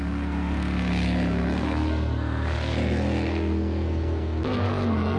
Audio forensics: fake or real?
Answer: fake